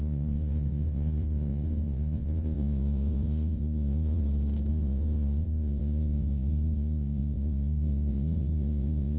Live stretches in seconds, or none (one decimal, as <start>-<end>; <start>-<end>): 4.2-4.7